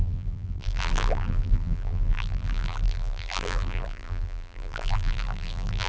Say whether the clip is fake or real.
fake